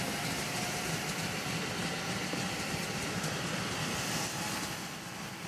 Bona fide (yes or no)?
no